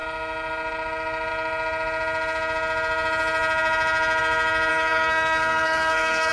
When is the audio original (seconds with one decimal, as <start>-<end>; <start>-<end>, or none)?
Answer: 0.0-4.7